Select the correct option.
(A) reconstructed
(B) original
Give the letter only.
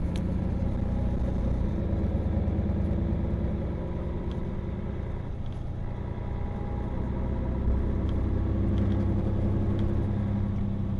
B